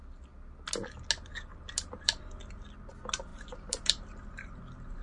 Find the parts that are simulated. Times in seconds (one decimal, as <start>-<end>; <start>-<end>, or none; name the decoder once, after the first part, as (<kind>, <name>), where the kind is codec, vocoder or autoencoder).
1.5-2.3 (vocoder, BigVGAN v2); 3.3-4.6